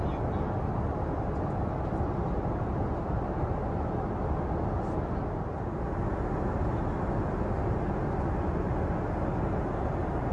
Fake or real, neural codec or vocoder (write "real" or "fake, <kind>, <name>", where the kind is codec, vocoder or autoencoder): real